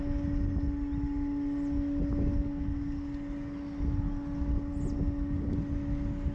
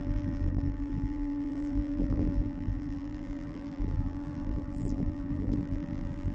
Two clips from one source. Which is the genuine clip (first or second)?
first